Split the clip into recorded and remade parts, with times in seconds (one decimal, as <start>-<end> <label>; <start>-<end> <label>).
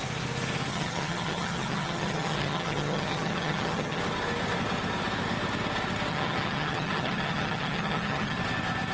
0.0-0.7 recorded; 0.7-4.0 remade; 4.0-6.1 recorded; 6.1-8.4 remade; 8.4-8.9 recorded